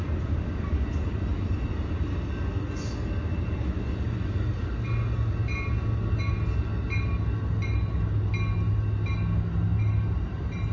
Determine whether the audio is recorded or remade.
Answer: recorded